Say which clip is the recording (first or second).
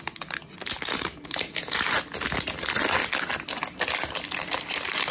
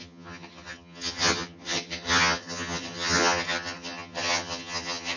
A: first